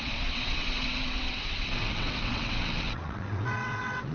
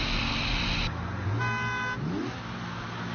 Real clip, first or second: second